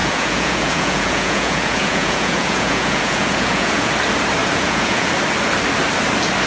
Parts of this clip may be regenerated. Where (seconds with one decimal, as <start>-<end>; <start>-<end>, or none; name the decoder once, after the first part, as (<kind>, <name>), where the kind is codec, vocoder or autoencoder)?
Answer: 0.0-3.9 (vocoder, Vocos); 4.4-5.1